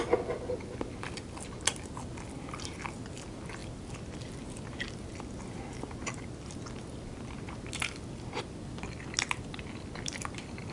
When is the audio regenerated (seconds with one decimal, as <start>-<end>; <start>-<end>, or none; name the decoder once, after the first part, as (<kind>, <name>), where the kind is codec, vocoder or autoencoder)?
none